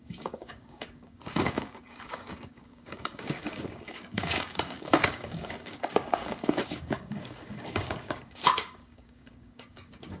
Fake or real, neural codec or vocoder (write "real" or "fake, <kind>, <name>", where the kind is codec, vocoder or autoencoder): fake, codec, DAC